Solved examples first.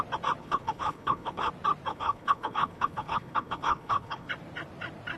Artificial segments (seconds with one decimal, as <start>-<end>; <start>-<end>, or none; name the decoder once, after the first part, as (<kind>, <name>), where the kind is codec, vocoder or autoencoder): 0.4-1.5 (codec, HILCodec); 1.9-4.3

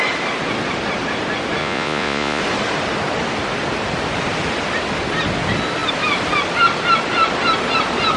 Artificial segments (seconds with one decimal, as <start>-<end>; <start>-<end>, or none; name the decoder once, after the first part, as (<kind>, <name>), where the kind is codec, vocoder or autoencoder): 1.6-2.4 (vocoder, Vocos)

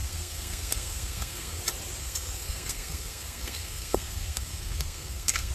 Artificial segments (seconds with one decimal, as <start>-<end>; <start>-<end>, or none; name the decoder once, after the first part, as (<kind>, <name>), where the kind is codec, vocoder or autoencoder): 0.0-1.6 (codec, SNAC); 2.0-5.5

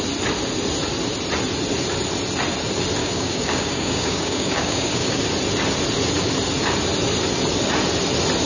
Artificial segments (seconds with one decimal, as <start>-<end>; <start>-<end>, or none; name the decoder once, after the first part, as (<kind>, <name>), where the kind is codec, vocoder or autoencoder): 3.0-5.2 (codec, DAC)

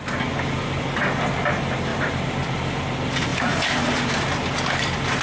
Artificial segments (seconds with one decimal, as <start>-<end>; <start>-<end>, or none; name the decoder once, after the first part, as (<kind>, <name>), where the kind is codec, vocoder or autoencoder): 1.9-2.8 (vocoder, BigVGAN v2); 3.3-4.1